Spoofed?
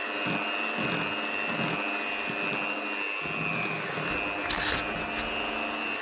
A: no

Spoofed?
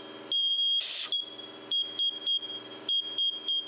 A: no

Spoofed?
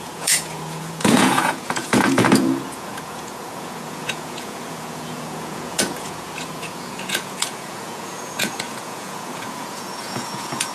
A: yes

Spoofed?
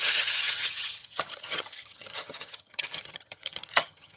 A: yes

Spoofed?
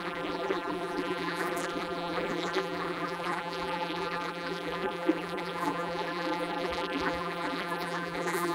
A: yes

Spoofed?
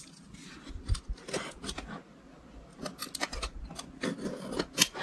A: no